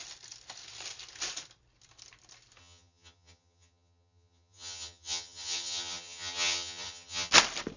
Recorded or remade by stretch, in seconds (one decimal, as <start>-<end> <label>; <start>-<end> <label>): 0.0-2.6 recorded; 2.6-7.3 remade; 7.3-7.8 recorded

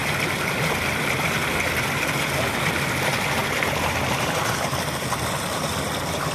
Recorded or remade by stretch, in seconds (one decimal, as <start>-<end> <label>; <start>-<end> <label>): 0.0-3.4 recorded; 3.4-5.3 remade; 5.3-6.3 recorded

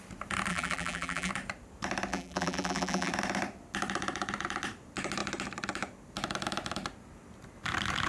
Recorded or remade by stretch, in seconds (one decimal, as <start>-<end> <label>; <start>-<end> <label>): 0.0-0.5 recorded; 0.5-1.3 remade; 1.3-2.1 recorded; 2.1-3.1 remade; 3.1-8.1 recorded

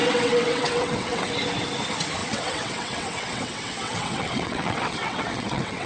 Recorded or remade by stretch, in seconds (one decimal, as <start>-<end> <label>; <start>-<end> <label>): 0.0-1.3 remade; 1.3-2.2 recorded; 2.2-5.9 remade

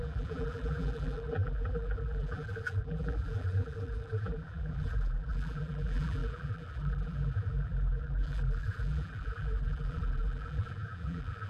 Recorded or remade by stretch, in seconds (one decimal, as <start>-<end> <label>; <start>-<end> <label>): 0.0-11.5 remade

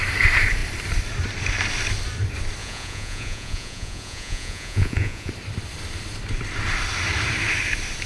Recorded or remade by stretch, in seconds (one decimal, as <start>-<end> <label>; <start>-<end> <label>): 0.0-2.6 recorded; 2.6-5.3 remade; 5.3-8.1 recorded